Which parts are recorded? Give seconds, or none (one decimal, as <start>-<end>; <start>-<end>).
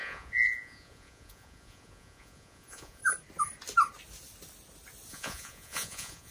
3.0-5.1